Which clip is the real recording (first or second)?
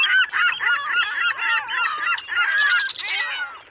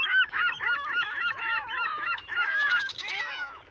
first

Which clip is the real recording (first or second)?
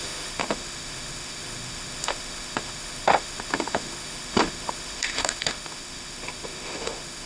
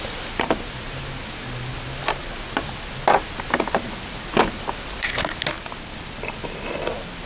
second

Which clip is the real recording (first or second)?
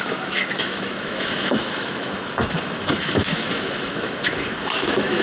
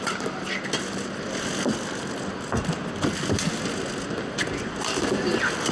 second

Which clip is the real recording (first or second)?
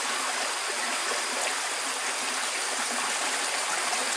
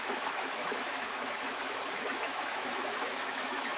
first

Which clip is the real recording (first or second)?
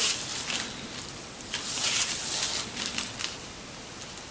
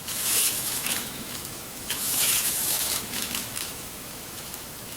first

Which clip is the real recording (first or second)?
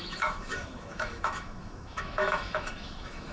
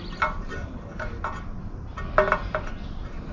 second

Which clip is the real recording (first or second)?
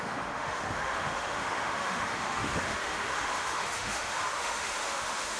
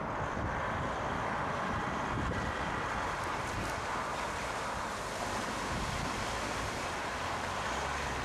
second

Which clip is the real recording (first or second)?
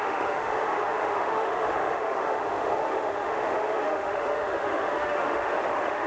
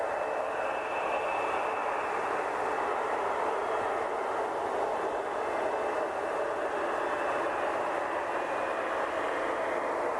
second